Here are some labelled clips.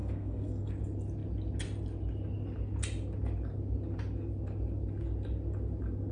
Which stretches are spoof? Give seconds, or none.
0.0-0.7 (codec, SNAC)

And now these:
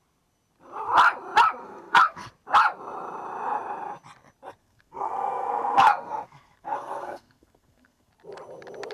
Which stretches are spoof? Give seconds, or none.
1.6-2.3 (codec, SNAC); 4.6-8.1